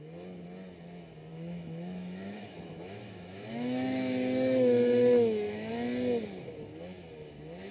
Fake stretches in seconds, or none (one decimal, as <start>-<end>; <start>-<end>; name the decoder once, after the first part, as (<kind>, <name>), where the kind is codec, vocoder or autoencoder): 1.3-5.7 (autoencoder, DAC-VAE)